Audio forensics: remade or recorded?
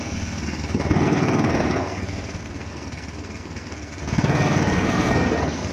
remade